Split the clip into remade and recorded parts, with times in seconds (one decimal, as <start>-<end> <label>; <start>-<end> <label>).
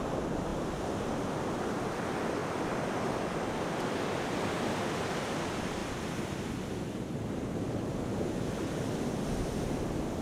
0.0-10.2 recorded